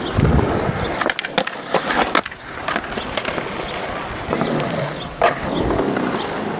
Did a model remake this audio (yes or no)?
no